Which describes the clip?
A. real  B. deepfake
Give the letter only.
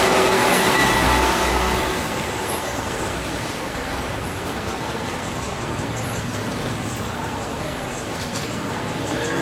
B